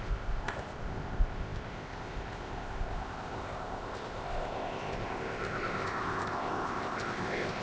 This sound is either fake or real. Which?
fake